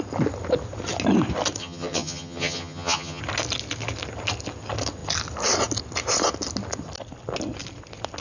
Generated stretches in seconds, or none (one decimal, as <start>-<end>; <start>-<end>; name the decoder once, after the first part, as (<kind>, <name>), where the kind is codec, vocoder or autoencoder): 1.6-3.2 (vocoder, HiFi-GAN)

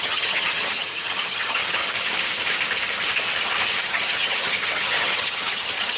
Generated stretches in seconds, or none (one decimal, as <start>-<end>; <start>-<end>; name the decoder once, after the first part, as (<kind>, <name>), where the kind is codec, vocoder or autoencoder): 0.0-1.8 (vocoder, HiFi-GAN); 3.8-6.0

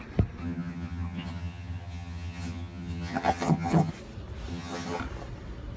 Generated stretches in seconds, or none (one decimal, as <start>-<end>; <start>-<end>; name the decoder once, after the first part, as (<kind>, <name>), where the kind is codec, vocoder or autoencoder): 0.4-3.9 (vocoder, HiFi-GAN); 4.5-5.0